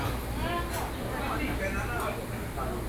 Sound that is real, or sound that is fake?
real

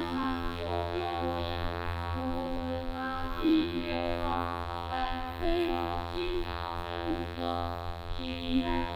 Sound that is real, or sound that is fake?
fake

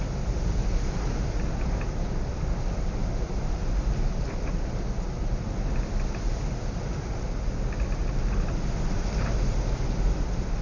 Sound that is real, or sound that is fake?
real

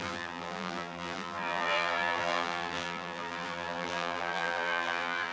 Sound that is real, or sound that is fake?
fake